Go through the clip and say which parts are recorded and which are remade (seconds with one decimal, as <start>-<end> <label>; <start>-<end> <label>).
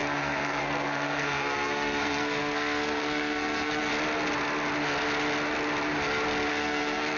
0.0-3.9 remade; 3.9-6.5 recorded; 6.5-7.2 remade